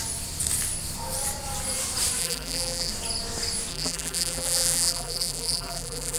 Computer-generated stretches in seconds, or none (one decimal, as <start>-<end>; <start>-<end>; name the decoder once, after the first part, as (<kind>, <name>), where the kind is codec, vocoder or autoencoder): 2.2-2.9 (vocoder, BigVGAN v2); 3.7-6.2